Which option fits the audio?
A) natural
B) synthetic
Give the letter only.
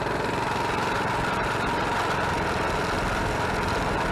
A